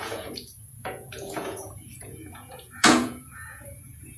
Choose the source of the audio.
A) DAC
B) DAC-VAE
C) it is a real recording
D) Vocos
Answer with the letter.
D